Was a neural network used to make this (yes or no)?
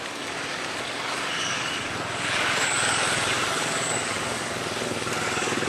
yes